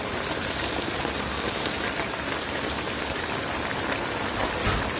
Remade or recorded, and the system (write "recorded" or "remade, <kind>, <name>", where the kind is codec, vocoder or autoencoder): remade, vocoder, BigVGAN v2